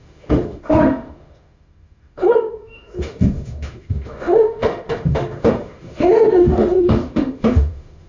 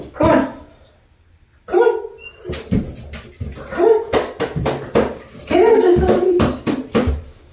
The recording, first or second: second